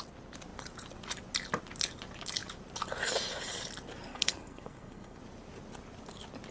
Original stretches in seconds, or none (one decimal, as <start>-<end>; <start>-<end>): 0.0-4.1; 5.2-6.5